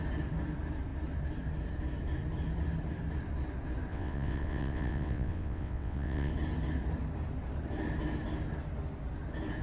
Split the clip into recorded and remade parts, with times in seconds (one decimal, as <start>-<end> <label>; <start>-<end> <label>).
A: 0.0-3.9 recorded; 3.9-6.3 remade; 6.3-9.6 recorded